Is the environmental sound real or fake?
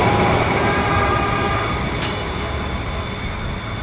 real